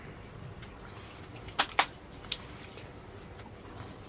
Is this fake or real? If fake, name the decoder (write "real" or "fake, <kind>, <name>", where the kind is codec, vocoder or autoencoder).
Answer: real